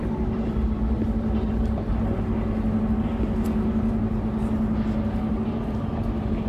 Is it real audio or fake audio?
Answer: real